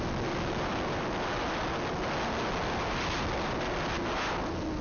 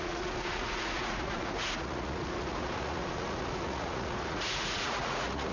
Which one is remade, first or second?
second